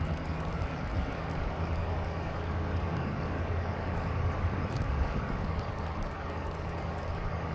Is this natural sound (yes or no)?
no